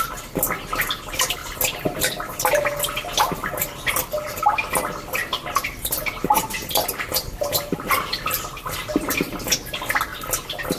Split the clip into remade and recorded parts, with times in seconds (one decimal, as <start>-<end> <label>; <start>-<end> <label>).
0.0-10.8 recorded